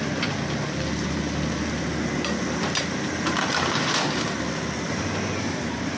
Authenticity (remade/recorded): recorded